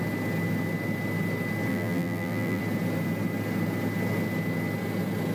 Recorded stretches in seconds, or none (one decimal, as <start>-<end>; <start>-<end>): 0.0-1.7; 2.6-5.3